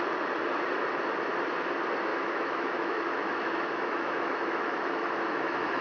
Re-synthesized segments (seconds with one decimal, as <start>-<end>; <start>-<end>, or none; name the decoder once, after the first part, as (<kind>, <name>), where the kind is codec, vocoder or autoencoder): 2.1-5.8 (autoencoder, DAC-VAE)